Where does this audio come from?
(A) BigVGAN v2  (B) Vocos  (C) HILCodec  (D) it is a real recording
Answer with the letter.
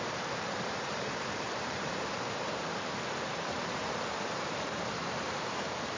A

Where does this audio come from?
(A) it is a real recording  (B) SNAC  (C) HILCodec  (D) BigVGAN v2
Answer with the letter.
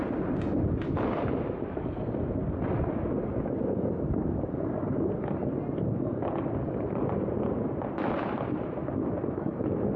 A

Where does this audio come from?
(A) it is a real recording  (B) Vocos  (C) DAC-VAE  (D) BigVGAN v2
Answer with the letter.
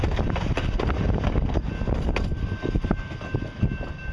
A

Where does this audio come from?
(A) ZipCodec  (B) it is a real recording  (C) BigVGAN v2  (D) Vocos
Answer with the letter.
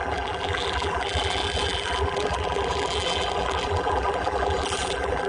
C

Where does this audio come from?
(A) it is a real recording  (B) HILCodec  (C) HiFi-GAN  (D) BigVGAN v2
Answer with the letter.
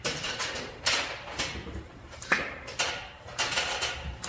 D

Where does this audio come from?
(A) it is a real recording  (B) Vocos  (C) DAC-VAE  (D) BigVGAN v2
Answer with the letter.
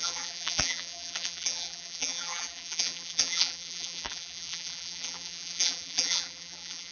D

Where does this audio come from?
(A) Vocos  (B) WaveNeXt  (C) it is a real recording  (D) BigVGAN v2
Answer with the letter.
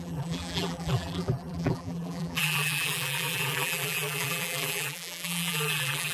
D